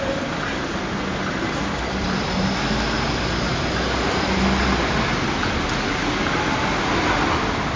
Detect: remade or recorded recorded